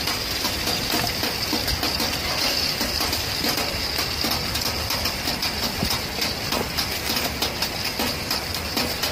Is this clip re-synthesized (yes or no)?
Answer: no